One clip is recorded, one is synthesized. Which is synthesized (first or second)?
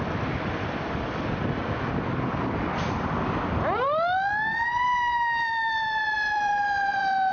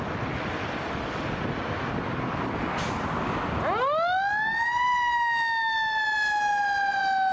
first